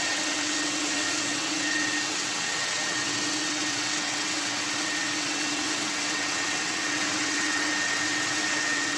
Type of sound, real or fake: fake